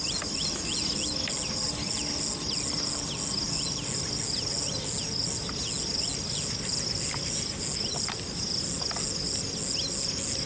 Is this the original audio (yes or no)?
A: yes